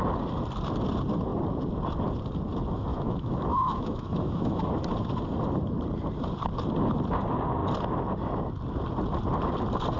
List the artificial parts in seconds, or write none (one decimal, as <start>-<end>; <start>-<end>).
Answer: 2.9-4.6